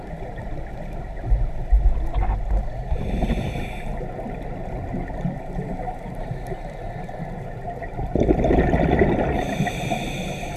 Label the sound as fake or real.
real